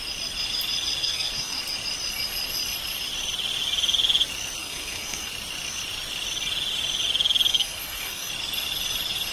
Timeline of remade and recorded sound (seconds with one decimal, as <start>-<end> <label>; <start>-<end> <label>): 0.0-1.0 recorded; 1.0-1.6 remade; 1.6-4.6 recorded; 4.6-5.3 remade; 5.3-7.5 recorded; 7.5-8.3 remade; 8.3-9.3 recorded